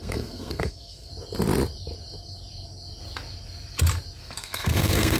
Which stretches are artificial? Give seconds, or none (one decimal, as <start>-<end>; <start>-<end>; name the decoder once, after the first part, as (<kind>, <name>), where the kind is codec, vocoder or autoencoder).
0.0-1.1 (codec, SNAC); 4.2-5.2